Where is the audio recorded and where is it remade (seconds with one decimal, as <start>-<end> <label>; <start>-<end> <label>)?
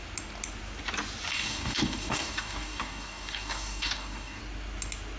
0.0-1.3 recorded; 1.3-4.4 remade; 4.4-5.2 recorded